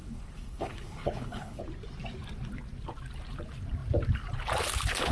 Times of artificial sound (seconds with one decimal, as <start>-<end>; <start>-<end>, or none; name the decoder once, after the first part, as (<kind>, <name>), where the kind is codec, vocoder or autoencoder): 0.0-1.6 (codec, HILCodec)

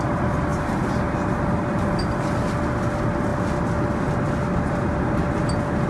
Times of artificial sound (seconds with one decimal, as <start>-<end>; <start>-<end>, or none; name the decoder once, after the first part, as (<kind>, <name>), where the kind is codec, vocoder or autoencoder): none

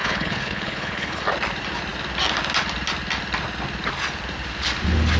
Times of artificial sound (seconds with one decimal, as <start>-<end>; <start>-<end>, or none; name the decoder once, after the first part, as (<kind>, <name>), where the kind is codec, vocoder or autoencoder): 0.0-1.2 (codec, HILCodec)

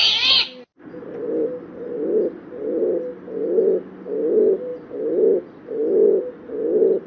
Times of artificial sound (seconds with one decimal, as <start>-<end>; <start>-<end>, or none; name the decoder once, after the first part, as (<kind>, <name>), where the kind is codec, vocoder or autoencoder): none

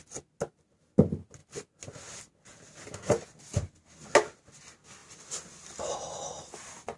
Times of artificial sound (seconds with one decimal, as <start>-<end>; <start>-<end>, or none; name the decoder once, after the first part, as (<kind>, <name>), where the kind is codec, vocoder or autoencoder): none

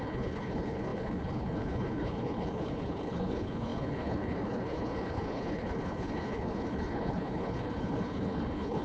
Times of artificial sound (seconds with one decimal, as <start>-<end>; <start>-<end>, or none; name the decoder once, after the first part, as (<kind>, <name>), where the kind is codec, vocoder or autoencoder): 0.0-8.8 (codec, HILCodec)

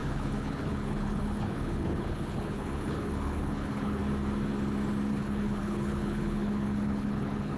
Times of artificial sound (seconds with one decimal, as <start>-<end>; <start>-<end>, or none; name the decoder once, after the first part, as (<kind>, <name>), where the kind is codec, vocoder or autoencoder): 0.0-4.0 (codec, HILCodec); 5.1-7.6